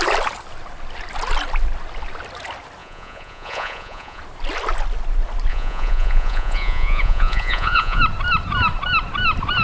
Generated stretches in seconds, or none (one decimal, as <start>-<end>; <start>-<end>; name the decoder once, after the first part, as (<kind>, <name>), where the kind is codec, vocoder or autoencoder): 2.8-4.2 (vocoder, Vocos); 5.5-8.0